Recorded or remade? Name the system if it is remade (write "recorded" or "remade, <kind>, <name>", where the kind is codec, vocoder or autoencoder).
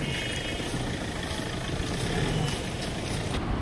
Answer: recorded